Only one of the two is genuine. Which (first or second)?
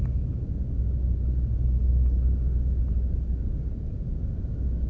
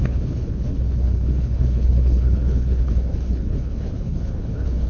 first